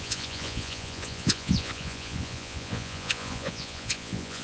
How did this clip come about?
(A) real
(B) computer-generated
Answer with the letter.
B